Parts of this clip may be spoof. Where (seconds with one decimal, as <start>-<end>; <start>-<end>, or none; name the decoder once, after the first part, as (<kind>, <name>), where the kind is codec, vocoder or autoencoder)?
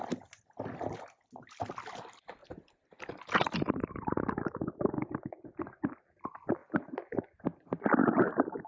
2.4-5.8 (vocoder, BigVGAN v2)